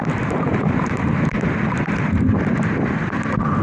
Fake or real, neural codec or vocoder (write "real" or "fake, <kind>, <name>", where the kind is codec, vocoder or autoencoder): real